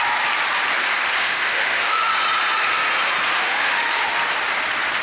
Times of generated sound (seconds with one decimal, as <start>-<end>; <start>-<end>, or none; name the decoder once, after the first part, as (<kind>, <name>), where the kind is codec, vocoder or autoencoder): 1.2-2.1 (autoencoder, DAC-VAE); 3.4-3.9